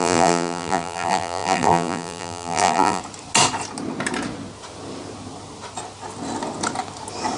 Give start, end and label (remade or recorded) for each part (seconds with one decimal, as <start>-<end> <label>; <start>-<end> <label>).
0.0-3.0 remade; 3.0-7.4 recorded